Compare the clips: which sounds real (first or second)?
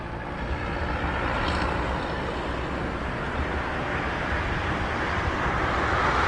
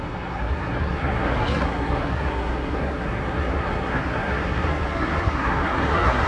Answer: first